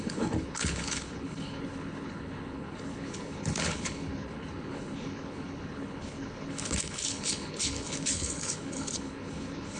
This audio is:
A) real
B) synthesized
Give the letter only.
B